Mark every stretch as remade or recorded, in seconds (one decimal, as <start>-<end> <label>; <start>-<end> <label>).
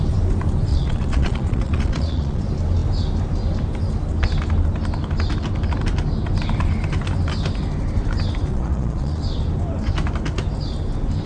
0.0-0.7 recorded; 0.7-2.4 remade; 2.4-8.5 recorded; 8.5-9.2 remade; 9.2-11.3 recorded